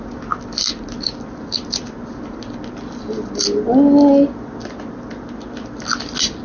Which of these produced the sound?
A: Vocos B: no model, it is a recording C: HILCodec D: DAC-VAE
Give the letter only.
B